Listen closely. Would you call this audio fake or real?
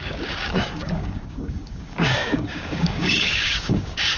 fake